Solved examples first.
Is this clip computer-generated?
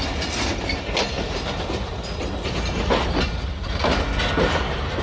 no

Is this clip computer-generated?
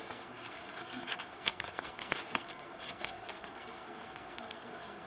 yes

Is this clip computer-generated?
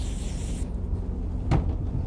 no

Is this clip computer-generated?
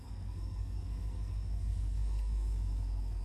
yes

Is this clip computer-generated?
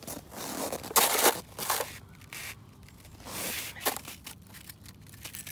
no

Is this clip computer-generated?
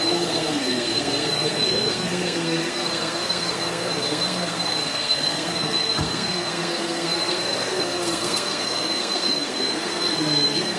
yes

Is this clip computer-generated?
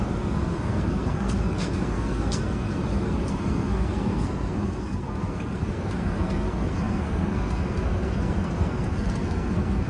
yes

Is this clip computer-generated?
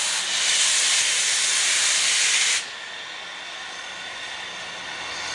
no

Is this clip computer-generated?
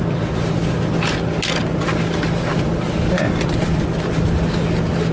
no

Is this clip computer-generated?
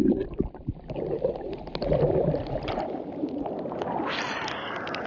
no